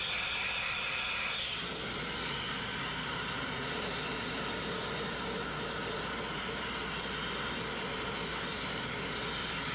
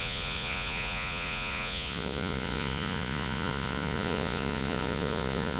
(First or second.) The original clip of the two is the first